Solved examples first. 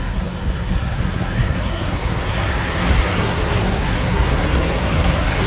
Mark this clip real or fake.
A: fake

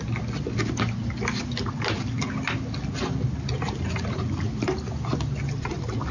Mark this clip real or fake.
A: real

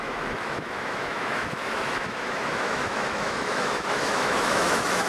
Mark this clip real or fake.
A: fake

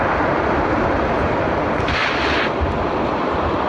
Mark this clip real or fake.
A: real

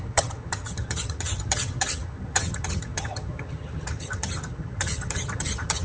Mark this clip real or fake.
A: fake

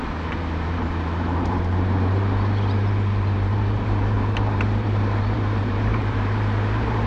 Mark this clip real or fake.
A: fake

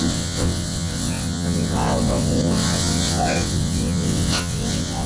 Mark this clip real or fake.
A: fake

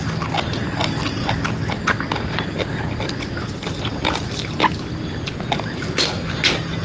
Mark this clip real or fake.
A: real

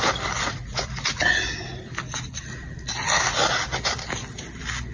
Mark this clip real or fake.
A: real